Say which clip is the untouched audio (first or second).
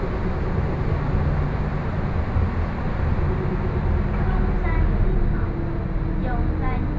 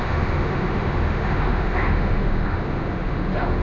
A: first